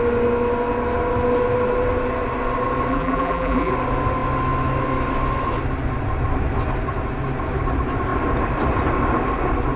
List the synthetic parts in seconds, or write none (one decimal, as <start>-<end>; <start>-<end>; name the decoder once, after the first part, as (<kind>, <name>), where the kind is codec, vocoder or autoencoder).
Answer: 2.9-3.7 (vocoder, BigVGAN v2)